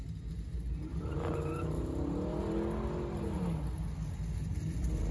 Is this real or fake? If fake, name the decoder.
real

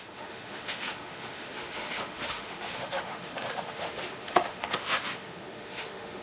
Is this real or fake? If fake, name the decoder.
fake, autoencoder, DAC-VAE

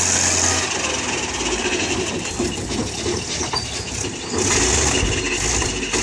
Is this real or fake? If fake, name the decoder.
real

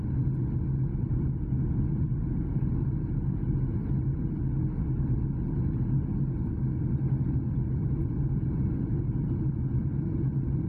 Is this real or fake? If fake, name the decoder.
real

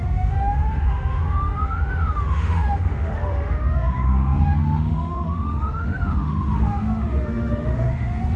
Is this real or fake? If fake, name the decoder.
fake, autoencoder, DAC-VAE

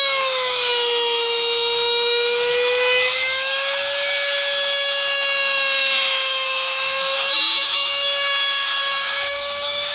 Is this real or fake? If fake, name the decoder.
fake, autoencoder, DAC-VAE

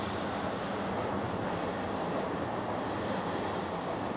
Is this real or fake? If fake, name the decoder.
real